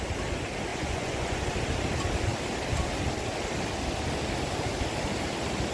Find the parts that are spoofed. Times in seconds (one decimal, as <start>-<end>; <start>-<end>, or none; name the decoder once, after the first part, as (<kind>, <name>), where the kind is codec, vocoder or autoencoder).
0.7-1.4 (vocoder, Vocos)